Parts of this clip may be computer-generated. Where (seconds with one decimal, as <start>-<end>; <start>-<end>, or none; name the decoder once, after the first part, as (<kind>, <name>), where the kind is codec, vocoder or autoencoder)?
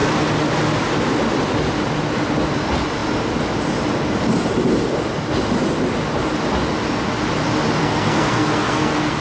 7.8-9.2 (codec, SNAC)